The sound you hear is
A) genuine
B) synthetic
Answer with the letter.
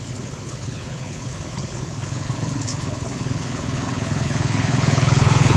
B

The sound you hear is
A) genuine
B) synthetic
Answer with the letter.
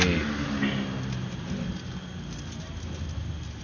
A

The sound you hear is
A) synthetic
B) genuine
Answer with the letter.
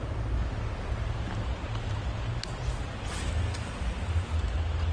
B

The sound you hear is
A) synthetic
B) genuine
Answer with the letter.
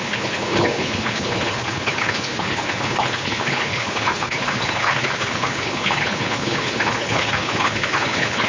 A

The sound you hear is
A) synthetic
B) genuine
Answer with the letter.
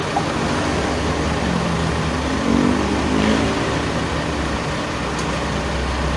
B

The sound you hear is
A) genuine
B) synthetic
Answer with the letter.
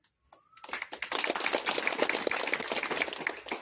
A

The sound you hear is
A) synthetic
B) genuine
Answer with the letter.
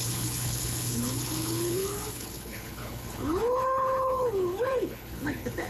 A